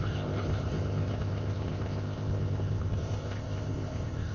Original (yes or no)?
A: no